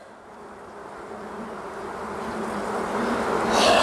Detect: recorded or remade recorded